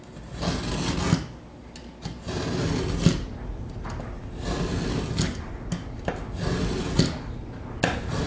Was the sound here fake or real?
real